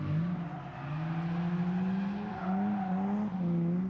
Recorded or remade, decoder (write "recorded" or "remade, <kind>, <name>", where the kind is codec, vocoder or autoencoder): recorded